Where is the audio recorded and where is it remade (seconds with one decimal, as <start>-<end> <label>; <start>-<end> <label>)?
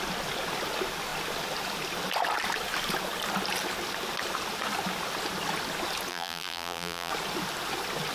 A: 0.0-6.1 recorded; 6.1-7.1 remade; 7.1-8.1 recorded